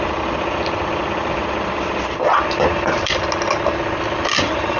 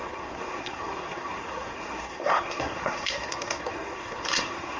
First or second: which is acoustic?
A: first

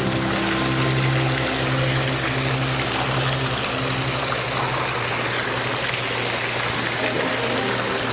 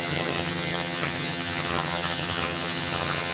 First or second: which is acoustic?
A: first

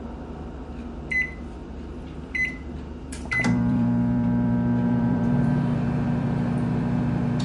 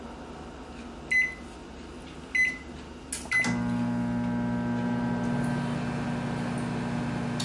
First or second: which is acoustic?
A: second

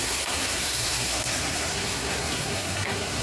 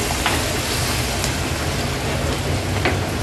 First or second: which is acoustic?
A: second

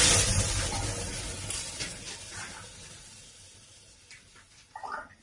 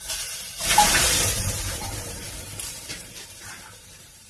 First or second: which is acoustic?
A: first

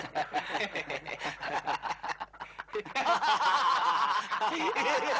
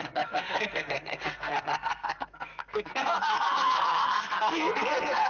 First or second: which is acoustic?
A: first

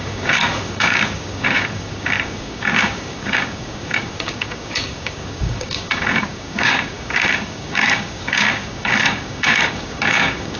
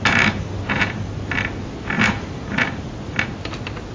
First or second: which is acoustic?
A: second